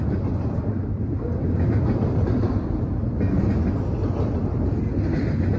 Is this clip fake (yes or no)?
no